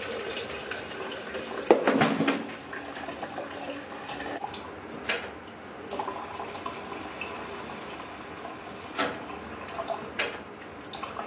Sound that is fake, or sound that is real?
real